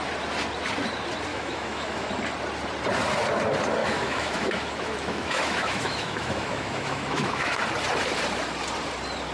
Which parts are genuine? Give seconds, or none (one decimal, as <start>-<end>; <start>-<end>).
0.0-1.3; 2.1-3.8; 7.6-9.3